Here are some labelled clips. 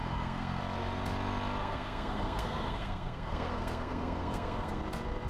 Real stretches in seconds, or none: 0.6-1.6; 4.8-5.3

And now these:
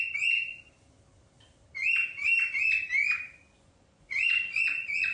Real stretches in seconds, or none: 0.5-3.6

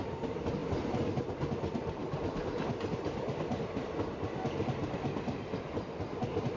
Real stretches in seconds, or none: 0.0-6.6

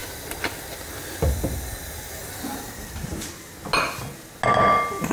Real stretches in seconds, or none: 0.0-2.2; 3.3-5.1

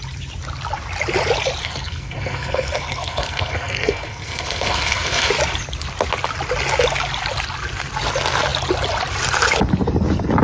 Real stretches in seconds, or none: 0.0-1.6; 5.3-10.4

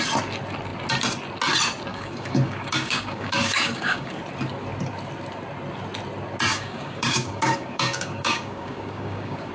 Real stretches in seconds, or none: 0.0-1.9; 4.2-6.5

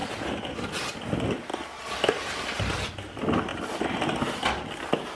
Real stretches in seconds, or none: 0.0-5.2

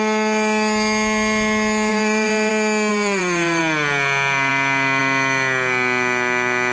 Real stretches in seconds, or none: 0.0-1.9; 2.5-2.9; 3.6-6.7